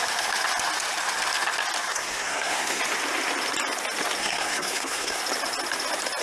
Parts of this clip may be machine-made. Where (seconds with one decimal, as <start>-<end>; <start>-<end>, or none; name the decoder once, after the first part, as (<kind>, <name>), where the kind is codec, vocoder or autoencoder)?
1.9-2.8 (codec, SNAC); 4.2-5.2